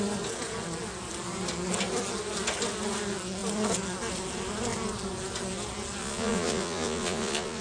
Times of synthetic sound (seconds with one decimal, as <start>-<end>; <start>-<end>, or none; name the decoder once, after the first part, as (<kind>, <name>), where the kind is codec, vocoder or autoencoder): 6.0-7.6 (vocoder, Vocos)